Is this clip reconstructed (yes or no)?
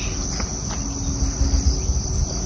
no